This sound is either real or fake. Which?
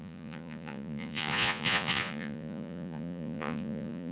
fake